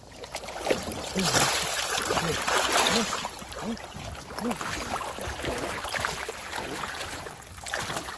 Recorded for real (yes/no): yes